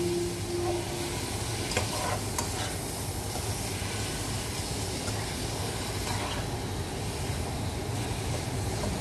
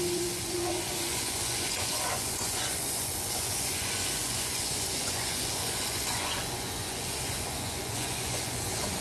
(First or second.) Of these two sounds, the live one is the first